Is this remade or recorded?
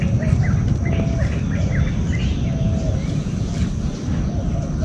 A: recorded